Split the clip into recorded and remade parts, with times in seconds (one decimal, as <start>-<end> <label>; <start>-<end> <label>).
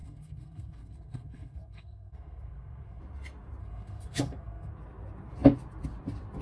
0.0-3.0 remade; 3.0-3.6 recorded; 3.6-4.7 remade; 4.7-6.4 recorded